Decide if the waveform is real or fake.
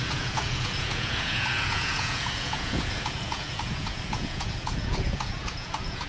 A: fake